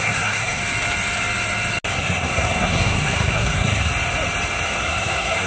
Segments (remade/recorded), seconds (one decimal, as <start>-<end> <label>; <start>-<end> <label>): 0.0-0.6 remade; 0.6-2.0 recorded; 2.0-3.9 remade; 3.9-4.8 recorded; 4.8-5.5 remade